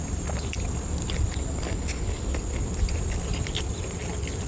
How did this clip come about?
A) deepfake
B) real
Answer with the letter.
B